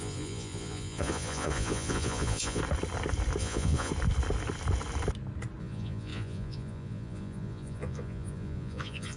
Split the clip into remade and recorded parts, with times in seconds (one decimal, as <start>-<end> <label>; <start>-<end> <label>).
0.0-2.6 remade; 2.6-3.4 recorded; 3.4-3.9 remade; 3.9-5.6 recorded; 5.6-9.2 remade